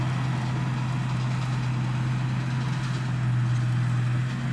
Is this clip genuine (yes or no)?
yes